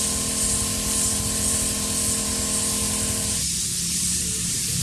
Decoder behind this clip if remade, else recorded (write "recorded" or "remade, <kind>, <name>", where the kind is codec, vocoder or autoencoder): recorded